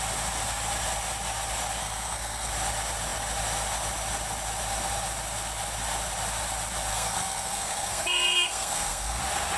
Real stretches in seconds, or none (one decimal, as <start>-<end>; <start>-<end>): 0.0-1.8; 2.5-6.9; 9.2-9.6